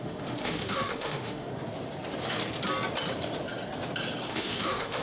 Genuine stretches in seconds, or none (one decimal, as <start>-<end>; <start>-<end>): 1.5-4.3